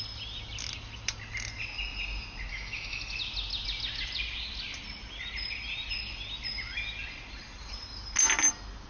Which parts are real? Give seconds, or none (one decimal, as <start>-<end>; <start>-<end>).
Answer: 0.0-2.5; 3.0-8.9